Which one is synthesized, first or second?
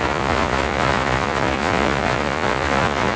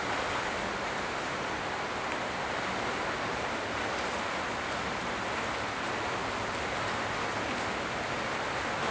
first